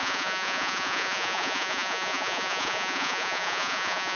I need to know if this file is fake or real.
fake